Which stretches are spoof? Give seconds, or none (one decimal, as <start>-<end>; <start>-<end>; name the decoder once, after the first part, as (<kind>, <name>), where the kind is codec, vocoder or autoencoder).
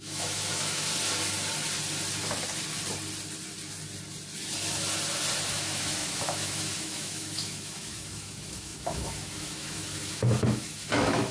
0.0-0.9 (autoencoder, DAC-VAE); 5.5-11.3